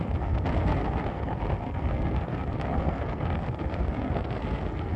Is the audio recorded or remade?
remade